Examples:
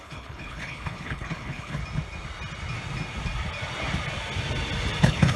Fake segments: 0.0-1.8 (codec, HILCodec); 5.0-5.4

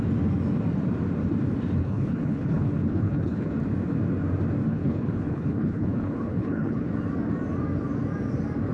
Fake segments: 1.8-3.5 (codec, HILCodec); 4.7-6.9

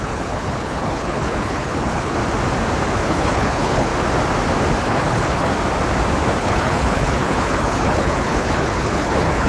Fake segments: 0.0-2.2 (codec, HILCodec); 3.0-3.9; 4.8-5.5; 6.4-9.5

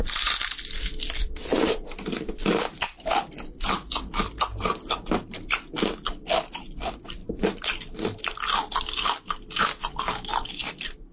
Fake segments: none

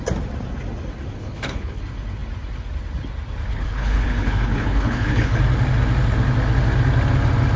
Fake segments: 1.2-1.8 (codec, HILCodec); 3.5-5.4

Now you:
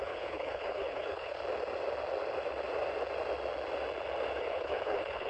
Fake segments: 0.0-1.4 (codec, HILCodec); 4.4-5.3